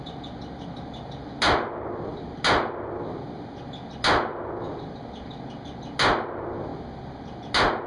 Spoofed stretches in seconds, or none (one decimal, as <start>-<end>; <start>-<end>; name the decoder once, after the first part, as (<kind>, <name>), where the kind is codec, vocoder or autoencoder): none

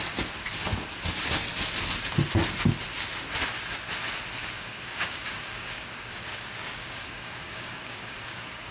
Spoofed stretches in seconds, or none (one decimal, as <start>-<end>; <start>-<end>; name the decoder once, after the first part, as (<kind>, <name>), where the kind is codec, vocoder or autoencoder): 4.4-8.7 (codec, DAC)

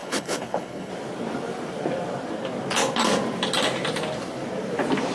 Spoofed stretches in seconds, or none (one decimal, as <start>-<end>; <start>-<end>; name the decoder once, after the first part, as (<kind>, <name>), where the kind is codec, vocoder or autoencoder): 0.0-0.9 (codec, HILCodec)

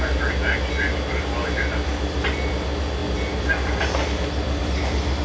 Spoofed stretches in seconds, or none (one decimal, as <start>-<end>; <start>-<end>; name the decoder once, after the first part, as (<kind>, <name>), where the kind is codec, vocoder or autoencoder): none

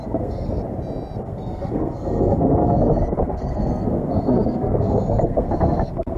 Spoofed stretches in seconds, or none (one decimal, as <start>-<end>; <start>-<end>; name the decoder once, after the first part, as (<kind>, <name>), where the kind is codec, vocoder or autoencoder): 0.0-0.6 (codec, SNAC); 1.2-6.2

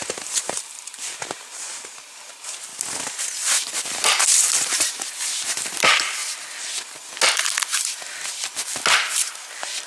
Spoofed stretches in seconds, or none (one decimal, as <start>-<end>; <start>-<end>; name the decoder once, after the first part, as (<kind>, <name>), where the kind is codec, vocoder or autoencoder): 0.0-2.7 (vocoder, BigVGAN v2); 3.7-6.2

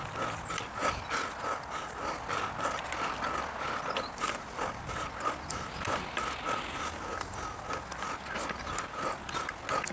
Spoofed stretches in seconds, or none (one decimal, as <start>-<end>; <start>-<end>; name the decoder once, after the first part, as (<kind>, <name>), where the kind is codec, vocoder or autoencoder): none

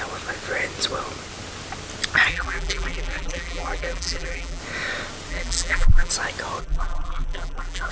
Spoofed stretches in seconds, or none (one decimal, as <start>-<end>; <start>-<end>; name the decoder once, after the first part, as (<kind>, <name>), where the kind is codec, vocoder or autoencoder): 2.3-4.6 (vocoder, BigVGAN v2); 5.3-6.1; 6.6-7.9